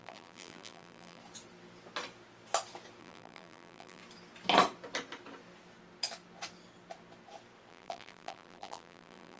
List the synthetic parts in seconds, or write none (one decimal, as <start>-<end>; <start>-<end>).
0.0-1.2; 3.0-4.0; 7.7-9.4